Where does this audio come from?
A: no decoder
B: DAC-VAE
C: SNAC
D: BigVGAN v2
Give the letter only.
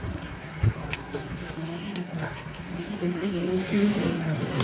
C